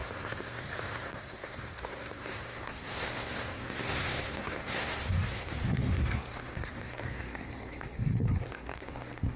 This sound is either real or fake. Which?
fake